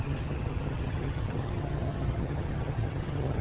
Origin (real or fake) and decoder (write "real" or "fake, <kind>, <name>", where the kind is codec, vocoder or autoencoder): fake, vocoder, HiFi-GAN